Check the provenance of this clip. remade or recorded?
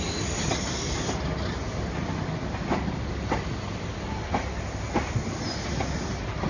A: recorded